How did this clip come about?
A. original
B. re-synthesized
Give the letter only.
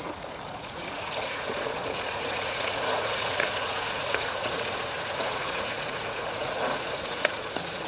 B